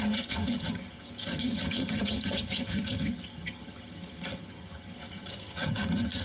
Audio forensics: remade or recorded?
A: remade